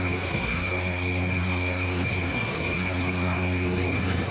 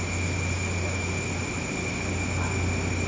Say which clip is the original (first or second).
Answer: second